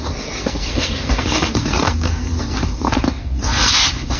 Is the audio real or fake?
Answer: fake